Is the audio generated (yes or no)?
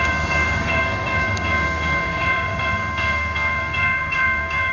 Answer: yes